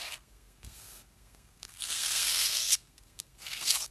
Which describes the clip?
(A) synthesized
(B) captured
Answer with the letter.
A